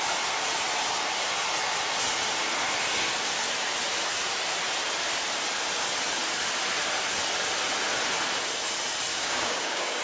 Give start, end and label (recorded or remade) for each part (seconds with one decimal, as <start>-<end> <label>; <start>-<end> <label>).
0.0-9.1 recorded; 9.1-10.0 remade